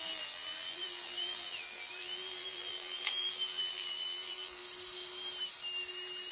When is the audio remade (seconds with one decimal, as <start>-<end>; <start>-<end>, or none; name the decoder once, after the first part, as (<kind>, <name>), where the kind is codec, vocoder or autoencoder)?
0.0-4.6 (vocoder, BigVGAN v2)